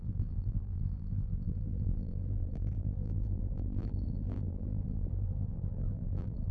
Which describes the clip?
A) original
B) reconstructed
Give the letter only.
B